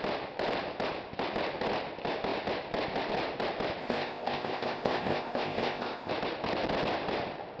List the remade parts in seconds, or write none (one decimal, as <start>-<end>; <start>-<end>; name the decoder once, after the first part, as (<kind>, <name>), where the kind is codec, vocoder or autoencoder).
3.8-6.1 (codec, ZipCodec)